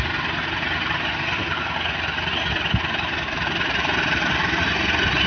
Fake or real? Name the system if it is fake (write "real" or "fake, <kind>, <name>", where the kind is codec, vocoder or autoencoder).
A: real